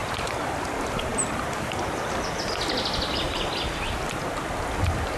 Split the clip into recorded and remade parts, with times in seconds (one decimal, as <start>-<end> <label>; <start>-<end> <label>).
0.0-0.7 remade; 0.7-5.2 recorded